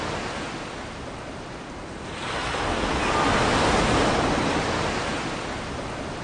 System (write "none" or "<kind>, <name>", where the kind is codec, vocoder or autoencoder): none